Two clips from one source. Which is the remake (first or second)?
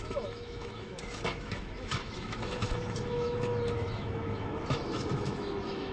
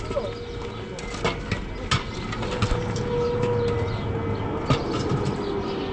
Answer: first